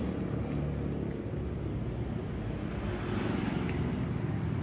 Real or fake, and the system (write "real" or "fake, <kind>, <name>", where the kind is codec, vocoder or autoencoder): real